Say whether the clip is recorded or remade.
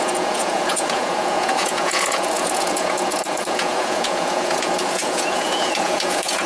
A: remade